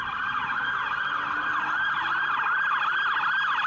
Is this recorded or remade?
recorded